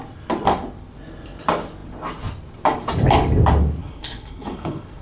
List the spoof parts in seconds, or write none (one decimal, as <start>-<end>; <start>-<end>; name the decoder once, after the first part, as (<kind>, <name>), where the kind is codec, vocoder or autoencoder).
3.8-5.0 (codec, SNAC)